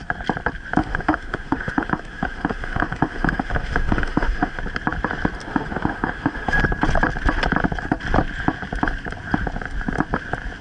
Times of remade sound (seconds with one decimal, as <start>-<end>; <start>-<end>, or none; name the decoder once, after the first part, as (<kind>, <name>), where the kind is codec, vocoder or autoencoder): 0.8-4.6 (autoencoder, DAC-VAE); 5.4-6.6

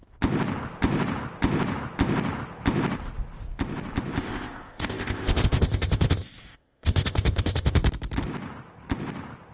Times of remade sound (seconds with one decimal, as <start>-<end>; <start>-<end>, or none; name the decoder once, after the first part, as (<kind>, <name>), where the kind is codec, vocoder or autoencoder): 4.2-7.8 (codec, ZipCodec)

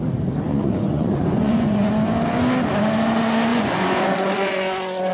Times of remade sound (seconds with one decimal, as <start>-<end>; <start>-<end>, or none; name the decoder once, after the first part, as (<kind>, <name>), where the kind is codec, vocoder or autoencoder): 0.5-1.9 (vocoder, Vocos); 3.5-5.1

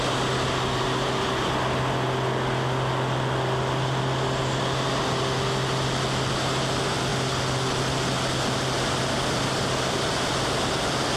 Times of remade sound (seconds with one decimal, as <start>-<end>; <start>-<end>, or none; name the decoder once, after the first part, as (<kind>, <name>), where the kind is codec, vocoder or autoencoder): none

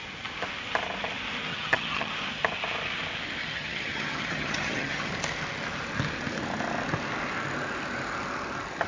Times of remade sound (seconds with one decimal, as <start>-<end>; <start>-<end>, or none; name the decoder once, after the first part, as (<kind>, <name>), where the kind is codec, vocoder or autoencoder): 1.5-2.1 (vocoder, HiFi-GAN); 3.4-5.1